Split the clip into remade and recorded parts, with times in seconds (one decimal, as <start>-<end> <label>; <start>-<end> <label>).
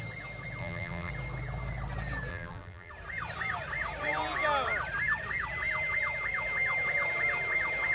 0.0-0.6 recorded; 0.6-1.1 remade; 1.1-2.3 recorded; 2.3-2.9 remade; 2.9-7.9 recorded